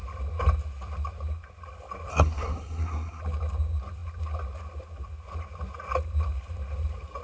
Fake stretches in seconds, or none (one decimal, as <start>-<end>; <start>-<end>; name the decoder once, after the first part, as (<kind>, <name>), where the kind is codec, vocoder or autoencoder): 2.1-3.2 (codec, SNAC)